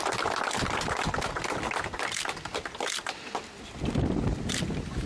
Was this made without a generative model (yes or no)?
yes